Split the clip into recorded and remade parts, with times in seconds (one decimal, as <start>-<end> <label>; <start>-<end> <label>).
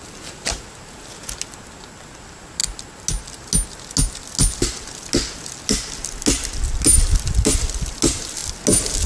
0.0-9.1 recorded